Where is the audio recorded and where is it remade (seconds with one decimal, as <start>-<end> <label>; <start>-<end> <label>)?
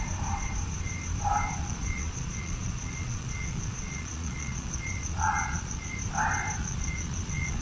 0.0-1.6 recorded; 1.6-5.9 remade; 5.9-6.6 recorded; 6.6-7.6 remade